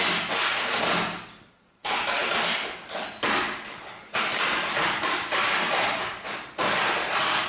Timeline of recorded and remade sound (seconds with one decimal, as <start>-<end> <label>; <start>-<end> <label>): 0.0-2.2 recorded; 2.2-6.1 remade; 6.1-7.5 recorded